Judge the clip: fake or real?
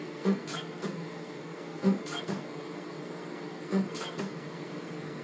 fake